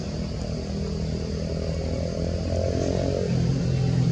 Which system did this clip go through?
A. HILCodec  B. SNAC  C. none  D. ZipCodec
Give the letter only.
C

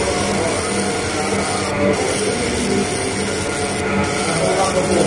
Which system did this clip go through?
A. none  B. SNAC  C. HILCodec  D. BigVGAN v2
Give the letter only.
A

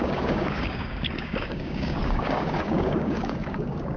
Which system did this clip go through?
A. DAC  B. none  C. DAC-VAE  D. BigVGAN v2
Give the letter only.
A